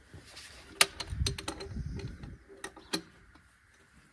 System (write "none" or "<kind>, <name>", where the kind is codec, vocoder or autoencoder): none